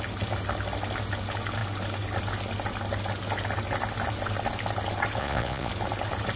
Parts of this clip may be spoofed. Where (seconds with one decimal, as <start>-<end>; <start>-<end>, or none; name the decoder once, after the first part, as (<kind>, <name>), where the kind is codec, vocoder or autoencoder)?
5.2-5.7 (vocoder, Vocos)